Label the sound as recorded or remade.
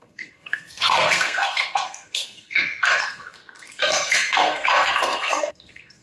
remade